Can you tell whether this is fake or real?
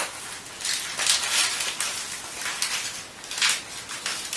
real